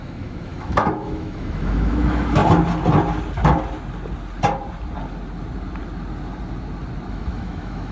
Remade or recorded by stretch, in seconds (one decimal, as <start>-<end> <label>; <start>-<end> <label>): 0.0-2.4 remade; 2.4-7.1 recorded; 7.1-7.9 remade